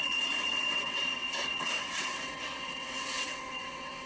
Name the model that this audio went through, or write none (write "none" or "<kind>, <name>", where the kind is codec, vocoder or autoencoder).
vocoder, WaveNeXt